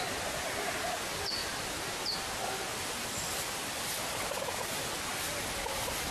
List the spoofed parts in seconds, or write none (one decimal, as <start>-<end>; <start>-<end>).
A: 1.4-2.0